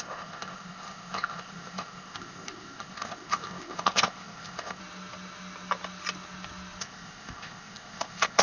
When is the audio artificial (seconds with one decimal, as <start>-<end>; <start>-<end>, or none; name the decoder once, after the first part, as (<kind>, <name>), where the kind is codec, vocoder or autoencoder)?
0.0-4.8 (codec, ZipCodec); 6.8-8.4